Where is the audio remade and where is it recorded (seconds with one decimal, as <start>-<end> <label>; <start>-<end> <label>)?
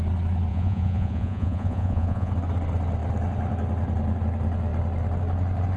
0.0-0.5 recorded; 0.5-2.3 remade; 2.3-5.8 recorded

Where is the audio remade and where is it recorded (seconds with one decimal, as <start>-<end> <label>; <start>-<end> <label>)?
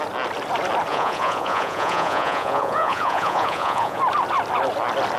0.0-0.9 recorded; 0.9-4.0 remade; 4.0-5.2 recorded